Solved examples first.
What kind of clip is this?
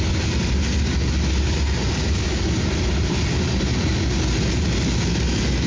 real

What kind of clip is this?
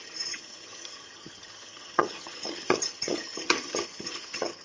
fake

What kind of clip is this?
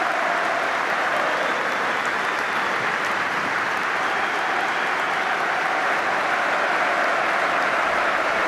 real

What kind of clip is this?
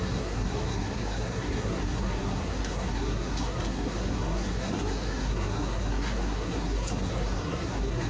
fake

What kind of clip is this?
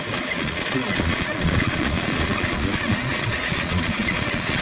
fake